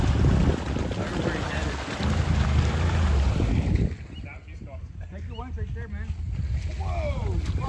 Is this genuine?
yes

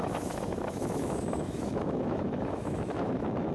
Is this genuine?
no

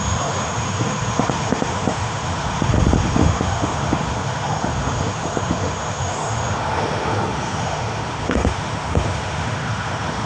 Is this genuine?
no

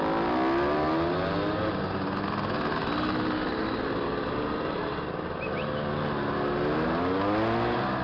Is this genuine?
yes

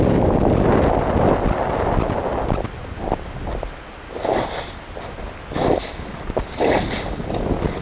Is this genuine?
yes